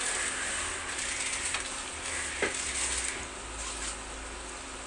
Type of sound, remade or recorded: recorded